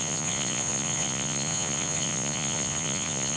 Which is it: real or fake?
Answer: fake